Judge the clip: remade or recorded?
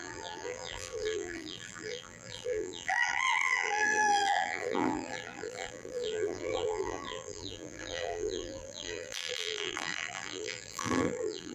remade